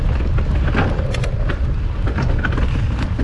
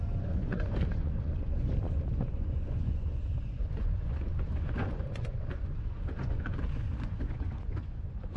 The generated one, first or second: second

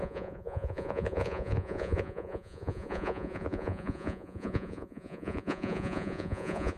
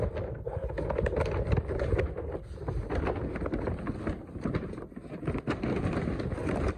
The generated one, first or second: first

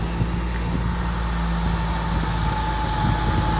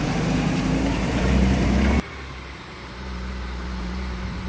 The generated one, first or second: second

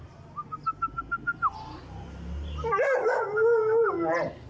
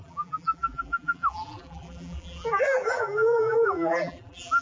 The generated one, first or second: second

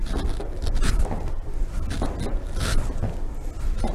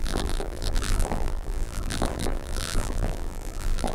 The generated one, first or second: second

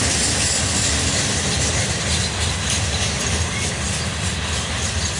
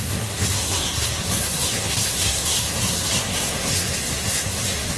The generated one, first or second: second